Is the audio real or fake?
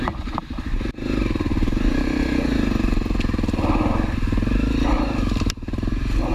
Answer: real